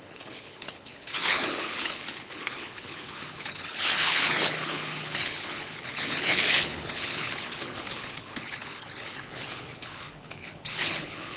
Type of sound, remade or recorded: remade